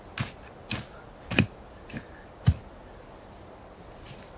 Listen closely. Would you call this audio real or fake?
real